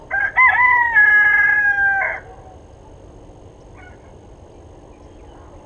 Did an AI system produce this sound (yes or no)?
no